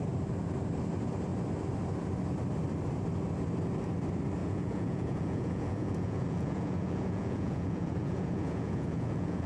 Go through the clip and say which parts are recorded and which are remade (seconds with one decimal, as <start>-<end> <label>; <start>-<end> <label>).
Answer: 0.0-4.4 recorded; 4.4-9.5 remade